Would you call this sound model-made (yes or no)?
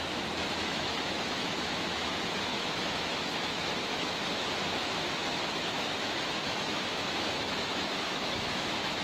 yes